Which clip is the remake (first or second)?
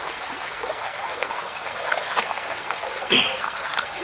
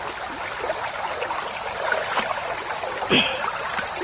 first